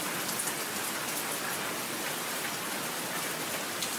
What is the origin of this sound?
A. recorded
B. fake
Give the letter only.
A